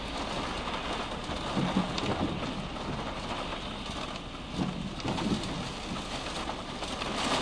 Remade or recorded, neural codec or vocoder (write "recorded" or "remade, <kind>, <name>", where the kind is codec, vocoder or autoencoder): recorded